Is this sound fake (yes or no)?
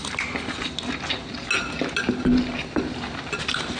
no